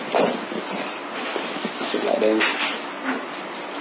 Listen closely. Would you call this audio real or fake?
real